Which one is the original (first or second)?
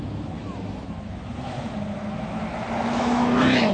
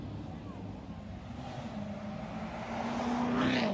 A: second